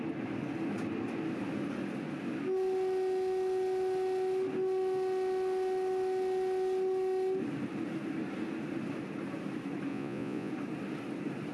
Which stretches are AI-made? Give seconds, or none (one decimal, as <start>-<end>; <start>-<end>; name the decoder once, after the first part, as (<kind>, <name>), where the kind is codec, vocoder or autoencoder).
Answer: 9.9-10.5 (vocoder, Vocos)